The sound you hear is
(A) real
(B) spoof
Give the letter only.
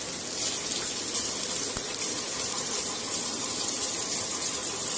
B